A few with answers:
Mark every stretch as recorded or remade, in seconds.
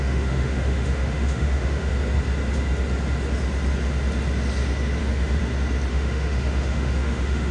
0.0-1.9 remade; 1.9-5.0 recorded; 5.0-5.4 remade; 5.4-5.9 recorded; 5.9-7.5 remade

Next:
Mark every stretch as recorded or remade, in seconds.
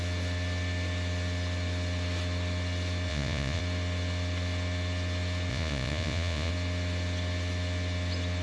0.0-3.1 recorded; 3.1-3.6 remade; 3.6-5.5 recorded; 5.5-6.5 remade; 6.5-8.4 recorded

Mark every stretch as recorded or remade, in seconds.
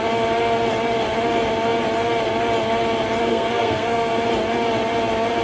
0.0-3.3 recorded; 3.3-4.1 remade; 4.1-5.4 recorded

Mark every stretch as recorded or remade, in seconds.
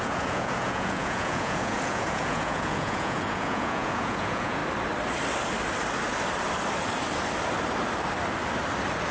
0.0-4.6 remade; 4.6-9.1 recorded